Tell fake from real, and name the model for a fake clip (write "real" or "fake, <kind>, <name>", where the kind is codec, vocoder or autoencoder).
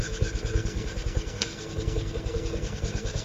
fake, codec, SNAC